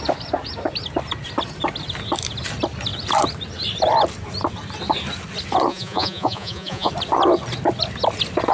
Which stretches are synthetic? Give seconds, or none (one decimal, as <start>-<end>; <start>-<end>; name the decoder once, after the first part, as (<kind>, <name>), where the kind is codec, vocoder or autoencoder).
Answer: 5.7-6.9 (vocoder, Vocos)